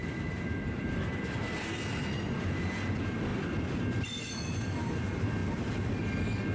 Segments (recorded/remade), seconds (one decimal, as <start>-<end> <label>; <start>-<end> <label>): 0.0-3.3 recorded; 3.3-5.0 remade; 5.0-5.4 recorded; 5.4-5.9 remade; 5.9-6.5 recorded